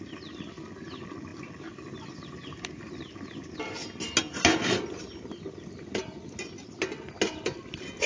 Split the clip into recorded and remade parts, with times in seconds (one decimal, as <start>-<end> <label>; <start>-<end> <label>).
0.0-1.3 recorded; 1.3-3.4 remade; 3.4-8.1 recorded